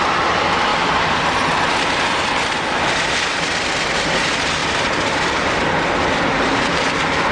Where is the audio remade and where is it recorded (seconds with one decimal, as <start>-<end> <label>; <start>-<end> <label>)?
0.0-0.7 recorded; 0.7-3.7 remade; 3.7-4.6 recorded; 4.6-6.8 remade; 6.8-7.3 recorded